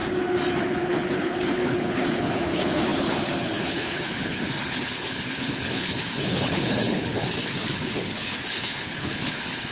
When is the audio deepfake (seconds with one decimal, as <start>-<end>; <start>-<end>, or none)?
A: 0.6-9.7